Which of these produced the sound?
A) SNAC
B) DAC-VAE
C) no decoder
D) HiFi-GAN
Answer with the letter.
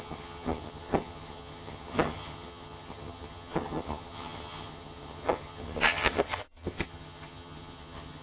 D